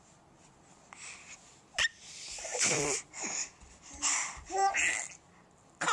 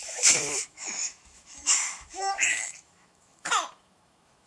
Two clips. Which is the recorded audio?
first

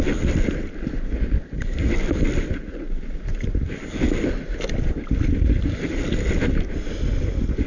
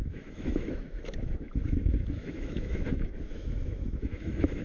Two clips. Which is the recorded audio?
first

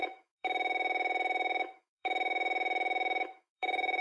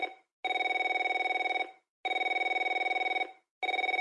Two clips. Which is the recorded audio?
second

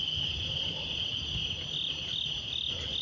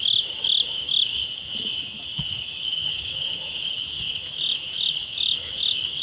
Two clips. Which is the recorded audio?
first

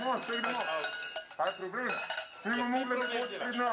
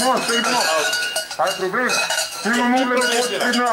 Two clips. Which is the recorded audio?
first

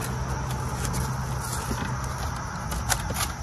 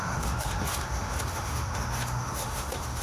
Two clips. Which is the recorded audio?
first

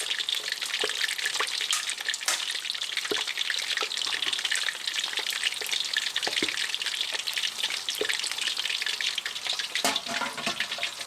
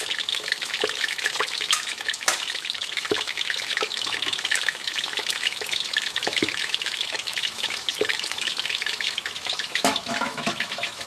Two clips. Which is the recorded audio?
first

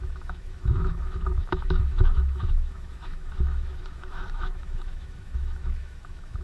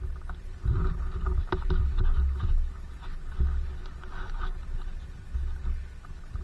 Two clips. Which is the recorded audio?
second